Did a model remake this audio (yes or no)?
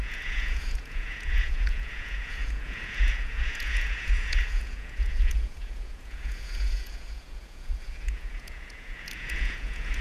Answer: yes